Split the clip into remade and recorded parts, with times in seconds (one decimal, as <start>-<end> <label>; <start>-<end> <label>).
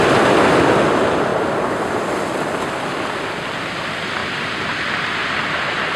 0.0-1.3 recorded; 1.3-2.0 remade; 2.0-4.2 recorded; 4.2-4.8 remade; 4.8-5.2 recorded; 5.2-6.0 remade